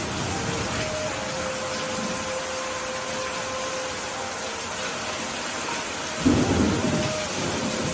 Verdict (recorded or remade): recorded